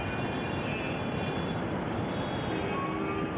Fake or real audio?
real